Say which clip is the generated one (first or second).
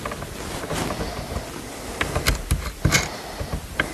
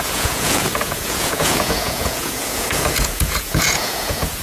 second